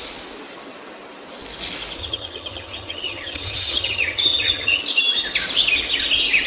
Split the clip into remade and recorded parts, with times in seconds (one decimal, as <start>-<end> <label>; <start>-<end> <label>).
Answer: 0.0-2.0 recorded; 2.0-4.8 remade; 4.8-6.5 recorded